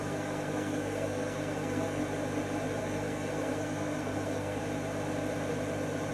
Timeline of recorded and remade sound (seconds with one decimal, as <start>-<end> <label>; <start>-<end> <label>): 0.0-2.0 remade; 2.0-2.8 recorded; 2.8-4.6 remade; 4.6-6.1 recorded